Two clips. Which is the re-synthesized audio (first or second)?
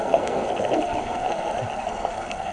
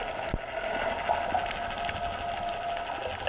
first